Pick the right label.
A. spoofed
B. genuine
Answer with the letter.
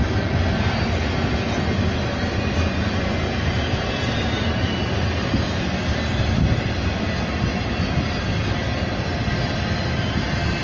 B